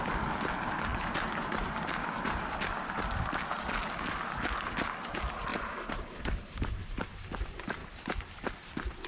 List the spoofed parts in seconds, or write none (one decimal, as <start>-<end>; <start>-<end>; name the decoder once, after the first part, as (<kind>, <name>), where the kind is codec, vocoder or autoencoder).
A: 0.9-3.0 (vocoder, BigVGAN v2); 5.5-7.1; 7.8-8.5